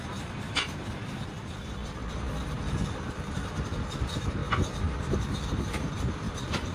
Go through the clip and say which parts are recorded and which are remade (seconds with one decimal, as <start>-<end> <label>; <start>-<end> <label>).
0.0-4.4 remade; 4.4-5.1 recorded; 5.1-6.7 remade

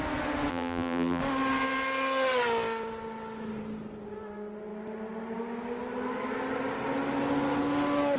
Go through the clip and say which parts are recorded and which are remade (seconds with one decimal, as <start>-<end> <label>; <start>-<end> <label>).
0.0-0.5 recorded; 0.5-1.2 remade; 1.2-8.2 recorded